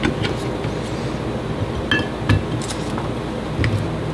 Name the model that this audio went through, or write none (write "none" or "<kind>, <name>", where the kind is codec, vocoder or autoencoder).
none